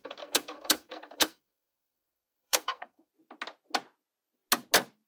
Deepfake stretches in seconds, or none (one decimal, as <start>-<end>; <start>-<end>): 0.0-3.1